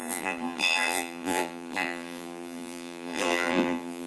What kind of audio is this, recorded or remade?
remade